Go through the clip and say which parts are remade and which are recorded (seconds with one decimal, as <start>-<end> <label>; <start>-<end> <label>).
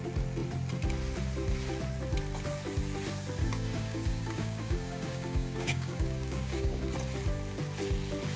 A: 0.0-3.4 recorded; 3.4-6.8 remade; 6.8-8.4 recorded